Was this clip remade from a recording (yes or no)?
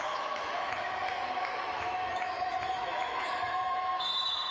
yes